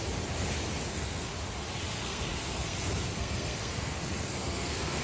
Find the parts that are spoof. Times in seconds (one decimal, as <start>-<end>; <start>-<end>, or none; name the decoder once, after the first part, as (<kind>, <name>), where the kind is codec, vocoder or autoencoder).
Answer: 0.9-1.3 (codec, SNAC); 1.9-5.0